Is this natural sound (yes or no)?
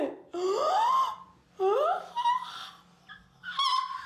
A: yes